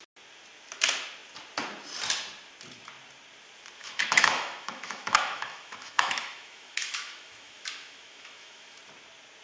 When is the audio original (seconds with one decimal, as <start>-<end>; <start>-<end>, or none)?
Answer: 0.0-3.8; 8.8-9.4